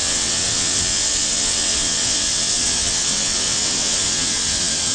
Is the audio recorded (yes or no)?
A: no